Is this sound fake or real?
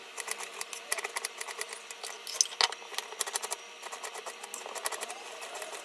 real